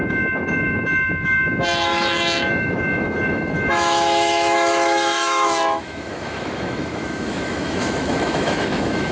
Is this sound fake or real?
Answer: fake